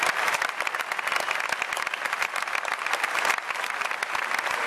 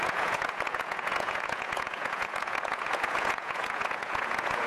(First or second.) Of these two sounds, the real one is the first